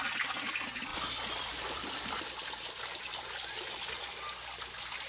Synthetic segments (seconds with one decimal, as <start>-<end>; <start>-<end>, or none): 0.9-4.0